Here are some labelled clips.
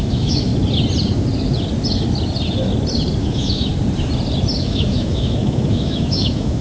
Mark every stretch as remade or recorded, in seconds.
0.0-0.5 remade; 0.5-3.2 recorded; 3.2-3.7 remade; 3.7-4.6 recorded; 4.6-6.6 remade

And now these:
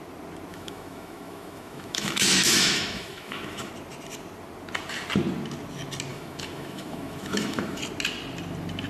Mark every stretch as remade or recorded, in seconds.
0.0-0.5 recorded; 0.5-3.7 remade; 3.7-6.1 recorded; 6.1-7.8 remade; 7.8-8.9 recorded

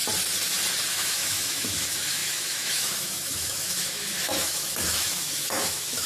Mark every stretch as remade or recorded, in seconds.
0.0-0.9 recorded; 0.9-6.1 remade